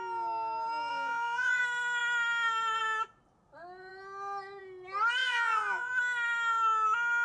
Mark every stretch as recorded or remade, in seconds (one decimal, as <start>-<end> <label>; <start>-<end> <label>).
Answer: 0.0-0.9 recorded; 0.9-1.6 remade; 1.6-5.2 recorded; 5.2-5.9 remade; 5.9-7.2 recorded

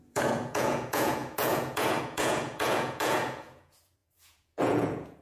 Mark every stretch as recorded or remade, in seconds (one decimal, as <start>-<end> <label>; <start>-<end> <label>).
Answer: 0.0-5.2 remade

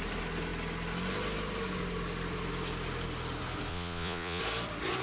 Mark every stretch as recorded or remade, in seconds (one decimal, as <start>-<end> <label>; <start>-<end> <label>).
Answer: 0.0-3.7 recorded; 3.7-4.4 remade; 4.4-5.0 recorded